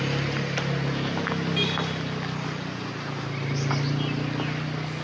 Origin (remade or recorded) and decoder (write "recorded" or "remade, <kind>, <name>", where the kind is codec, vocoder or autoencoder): recorded